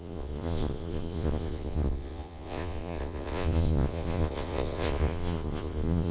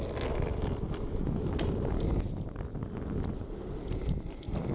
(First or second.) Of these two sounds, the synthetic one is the first